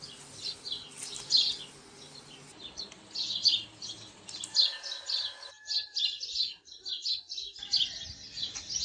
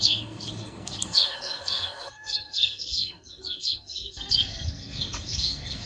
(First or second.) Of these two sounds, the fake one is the second